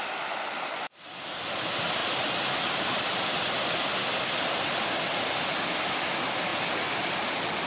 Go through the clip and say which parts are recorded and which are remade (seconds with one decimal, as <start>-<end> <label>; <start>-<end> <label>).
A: 0.0-7.7 recorded